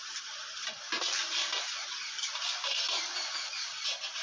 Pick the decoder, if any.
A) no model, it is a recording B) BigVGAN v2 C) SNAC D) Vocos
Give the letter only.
A